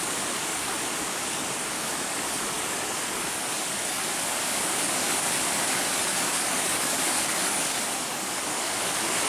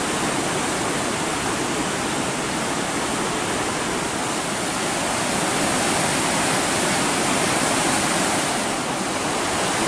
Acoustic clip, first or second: second